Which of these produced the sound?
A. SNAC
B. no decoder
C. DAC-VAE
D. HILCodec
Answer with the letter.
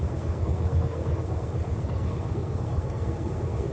A